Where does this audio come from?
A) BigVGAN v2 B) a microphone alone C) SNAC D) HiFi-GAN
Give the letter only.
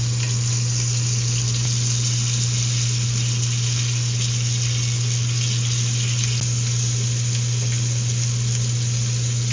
B